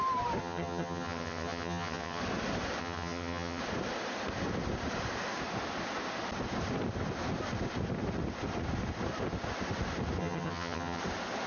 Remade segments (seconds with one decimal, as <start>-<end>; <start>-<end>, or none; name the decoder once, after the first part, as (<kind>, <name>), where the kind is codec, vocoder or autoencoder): 0.4-2.2 (vocoder, HiFi-GAN); 2.8-3.6; 10.2-11.0